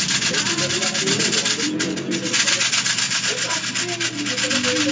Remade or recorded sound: recorded